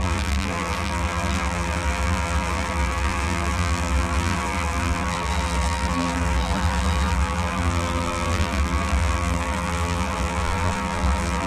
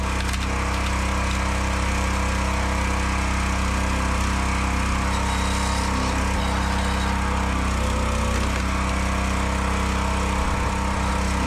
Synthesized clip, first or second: first